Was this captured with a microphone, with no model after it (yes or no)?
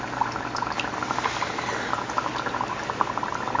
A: yes